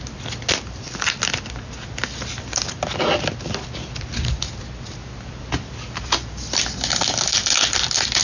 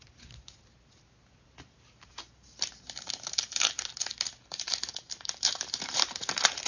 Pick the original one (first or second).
first